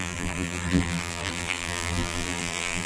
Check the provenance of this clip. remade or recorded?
remade